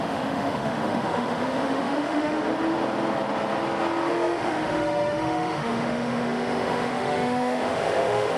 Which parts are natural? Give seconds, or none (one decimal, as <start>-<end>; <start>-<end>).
2.4-4.1